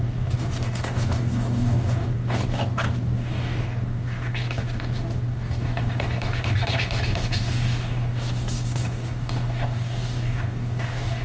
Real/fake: fake